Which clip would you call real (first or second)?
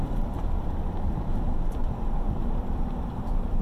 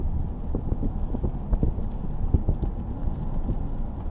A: second